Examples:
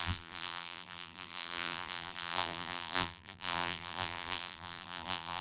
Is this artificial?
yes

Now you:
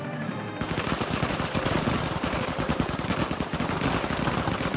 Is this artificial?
yes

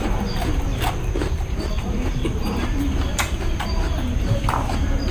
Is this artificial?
yes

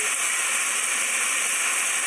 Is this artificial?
no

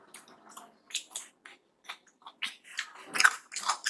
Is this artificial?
no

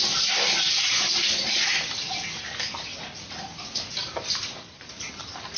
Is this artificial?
no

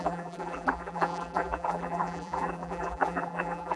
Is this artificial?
yes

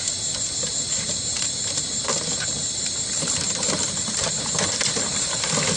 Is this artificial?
yes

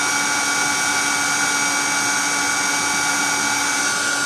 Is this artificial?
no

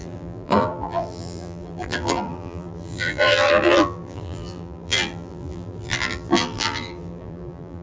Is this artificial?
yes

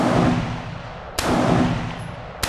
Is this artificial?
no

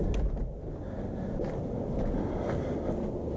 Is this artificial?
no